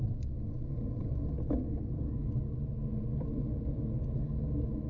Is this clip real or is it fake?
real